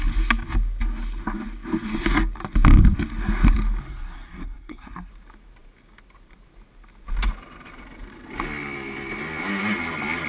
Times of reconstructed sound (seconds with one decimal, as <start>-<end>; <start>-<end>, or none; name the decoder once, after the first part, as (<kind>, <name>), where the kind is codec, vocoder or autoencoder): 3.8-5.1 (codec, SNAC)